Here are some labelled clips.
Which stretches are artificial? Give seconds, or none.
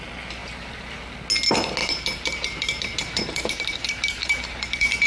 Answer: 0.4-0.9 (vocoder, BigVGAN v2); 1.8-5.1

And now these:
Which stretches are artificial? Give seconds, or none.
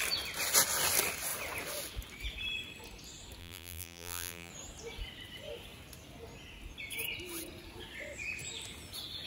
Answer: 3.4-4.5 (vocoder, BigVGAN v2)